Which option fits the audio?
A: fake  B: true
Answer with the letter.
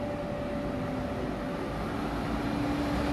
B